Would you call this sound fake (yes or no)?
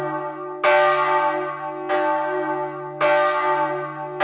no